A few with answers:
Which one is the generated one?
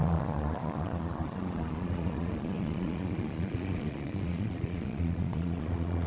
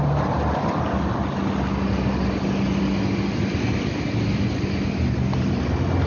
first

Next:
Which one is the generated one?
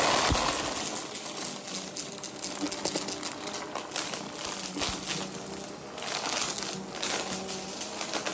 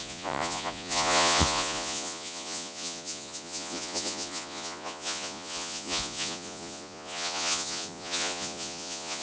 second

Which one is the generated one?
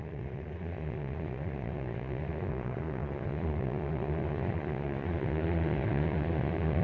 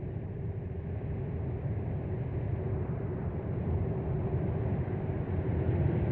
first